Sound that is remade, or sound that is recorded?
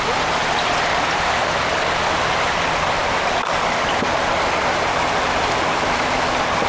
recorded